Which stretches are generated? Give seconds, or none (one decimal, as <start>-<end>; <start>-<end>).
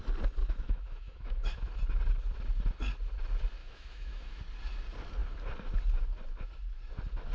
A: 0.4-1.7; 3.6-4.4